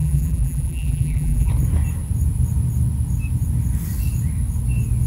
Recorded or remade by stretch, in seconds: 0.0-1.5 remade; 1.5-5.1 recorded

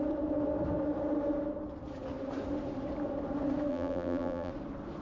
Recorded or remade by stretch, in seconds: 0.0-3.7 recorded; 3.7-4.5 remade; 4.5-5.0 recorded